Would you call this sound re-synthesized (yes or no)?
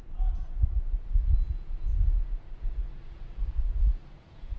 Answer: yes